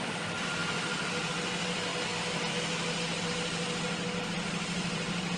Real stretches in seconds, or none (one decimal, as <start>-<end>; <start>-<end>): 0.0-5.4